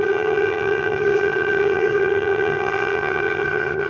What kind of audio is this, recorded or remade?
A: remade